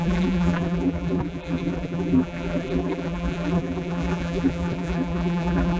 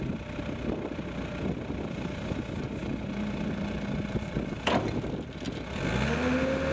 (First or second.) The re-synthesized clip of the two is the first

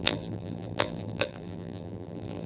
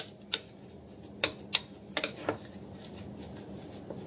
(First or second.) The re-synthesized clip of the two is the first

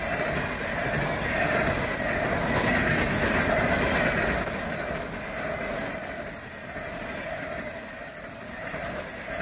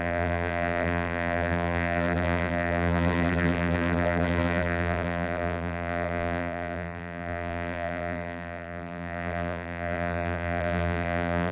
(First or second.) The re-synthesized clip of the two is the second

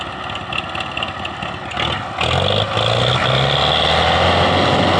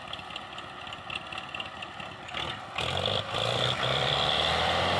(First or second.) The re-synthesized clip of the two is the second